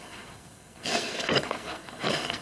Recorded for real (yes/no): no